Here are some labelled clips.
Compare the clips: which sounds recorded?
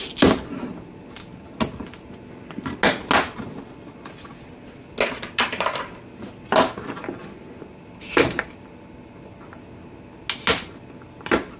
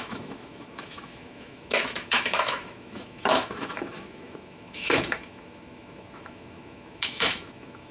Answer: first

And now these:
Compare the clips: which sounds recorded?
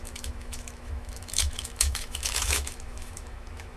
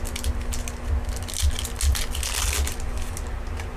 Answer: second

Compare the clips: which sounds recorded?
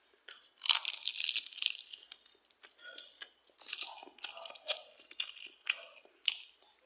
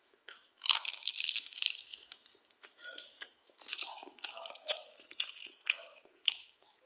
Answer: first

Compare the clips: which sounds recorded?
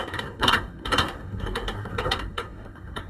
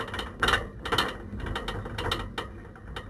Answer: second